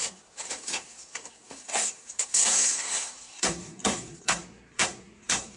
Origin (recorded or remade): remade